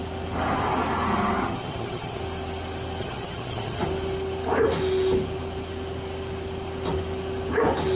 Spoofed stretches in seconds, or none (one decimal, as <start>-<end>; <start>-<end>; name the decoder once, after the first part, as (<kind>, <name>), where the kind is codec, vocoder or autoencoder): 1.4-2.2 (vocoder, HiFi-GAN); 3.0-3.8